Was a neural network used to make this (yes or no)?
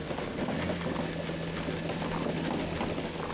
no